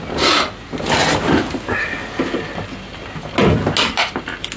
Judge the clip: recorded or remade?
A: recorded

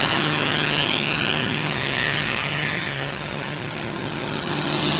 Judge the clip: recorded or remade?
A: remade